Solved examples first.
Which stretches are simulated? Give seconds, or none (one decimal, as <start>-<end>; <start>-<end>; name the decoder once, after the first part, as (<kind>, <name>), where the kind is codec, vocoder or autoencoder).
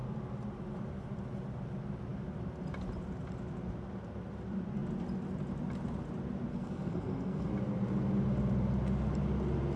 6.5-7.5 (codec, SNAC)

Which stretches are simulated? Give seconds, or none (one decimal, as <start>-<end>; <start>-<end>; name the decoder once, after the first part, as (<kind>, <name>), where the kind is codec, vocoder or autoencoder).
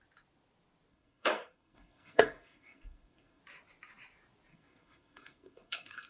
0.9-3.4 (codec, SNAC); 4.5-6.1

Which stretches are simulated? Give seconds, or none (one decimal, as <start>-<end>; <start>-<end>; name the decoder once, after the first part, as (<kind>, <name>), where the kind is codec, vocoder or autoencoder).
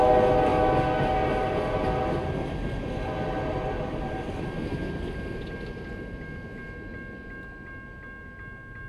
none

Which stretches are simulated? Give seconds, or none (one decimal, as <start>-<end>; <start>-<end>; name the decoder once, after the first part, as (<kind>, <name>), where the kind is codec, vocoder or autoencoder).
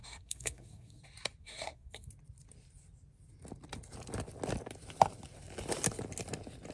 0.0-1.0 (codec, SNAC); 1.4-2.1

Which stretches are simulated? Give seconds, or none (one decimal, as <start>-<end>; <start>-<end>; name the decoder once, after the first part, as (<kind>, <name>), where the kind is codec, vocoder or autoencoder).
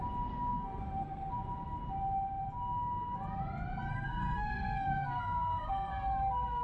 0.5-1.3 (codec, SNAC); 3.9-5.9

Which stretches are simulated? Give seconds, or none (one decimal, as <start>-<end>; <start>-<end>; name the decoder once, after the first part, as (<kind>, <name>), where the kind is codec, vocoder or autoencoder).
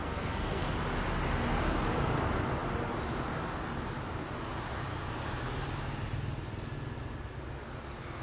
0.0-0.7 (codec, SNAC)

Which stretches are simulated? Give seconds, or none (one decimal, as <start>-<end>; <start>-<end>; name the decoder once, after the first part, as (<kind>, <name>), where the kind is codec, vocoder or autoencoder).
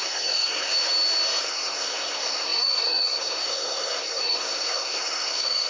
0.0-0.7 (codec, SNAC); 1.4-5.7